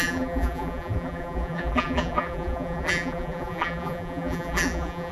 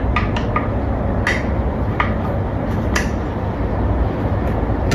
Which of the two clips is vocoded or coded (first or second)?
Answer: first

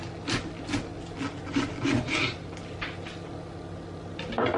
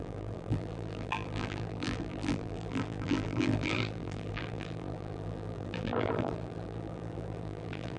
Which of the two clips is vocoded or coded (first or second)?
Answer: second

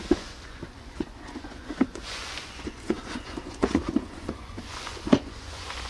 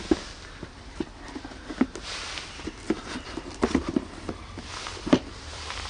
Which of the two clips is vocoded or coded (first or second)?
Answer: first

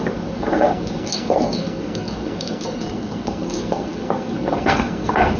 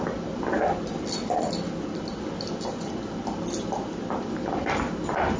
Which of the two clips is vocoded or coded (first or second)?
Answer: first